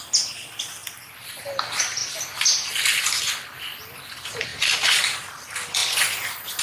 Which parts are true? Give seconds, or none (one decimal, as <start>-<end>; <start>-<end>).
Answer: 0.0-6.6